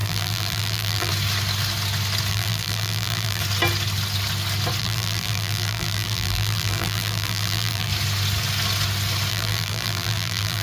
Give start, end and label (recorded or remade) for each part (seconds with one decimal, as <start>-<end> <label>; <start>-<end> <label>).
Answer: 0.0-1.1 remade; 1.1-2.3 recorded; 2.3-3.4 remade; 3.4-4.8 recorded; 4.8-7.9 remade; 7.9-9.3 recorded; 9.3-10.6 remade